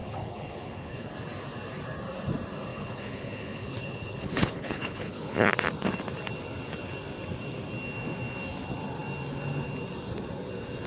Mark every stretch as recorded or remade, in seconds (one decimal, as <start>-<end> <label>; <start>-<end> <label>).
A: 0.0-1.1 remade; 1.1-2.7 recorded; 2.7-5.5 remade; 5.5-10.9 recorded